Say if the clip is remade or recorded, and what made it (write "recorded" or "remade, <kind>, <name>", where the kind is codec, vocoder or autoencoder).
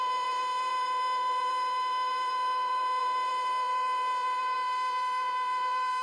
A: remade, vocoder, Vocos